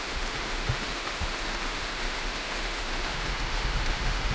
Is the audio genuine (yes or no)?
no